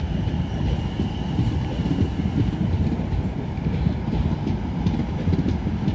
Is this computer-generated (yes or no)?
no